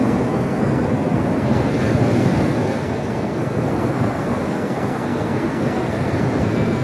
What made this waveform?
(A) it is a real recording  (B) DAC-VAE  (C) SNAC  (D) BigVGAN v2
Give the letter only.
C